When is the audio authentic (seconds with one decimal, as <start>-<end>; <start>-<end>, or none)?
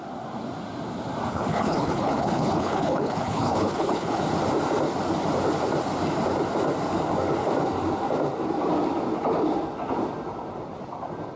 0.0-1.3; 4.2-11.4